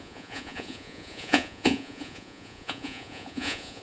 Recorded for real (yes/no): no